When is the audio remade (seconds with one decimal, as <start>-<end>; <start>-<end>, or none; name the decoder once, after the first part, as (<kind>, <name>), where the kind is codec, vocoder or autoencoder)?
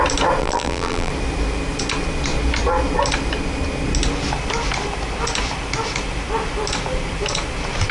0.4-1.1 (vocoder, BigVGAN v2)